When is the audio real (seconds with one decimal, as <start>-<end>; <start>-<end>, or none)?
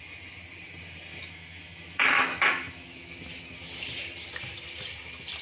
0.0-1.1; 3.2-5.4